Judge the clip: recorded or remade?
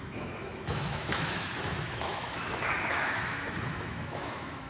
remade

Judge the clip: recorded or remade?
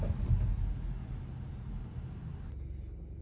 recorded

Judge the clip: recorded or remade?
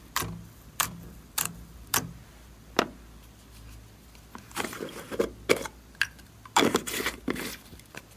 recorded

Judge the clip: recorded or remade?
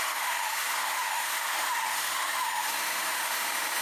remade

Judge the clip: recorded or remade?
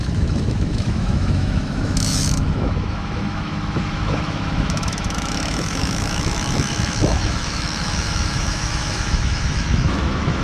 remade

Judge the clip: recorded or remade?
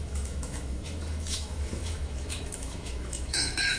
remade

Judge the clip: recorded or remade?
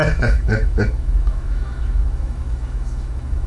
remade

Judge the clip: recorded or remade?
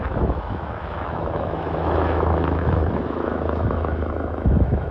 remade